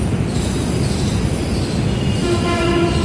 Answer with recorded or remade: recorded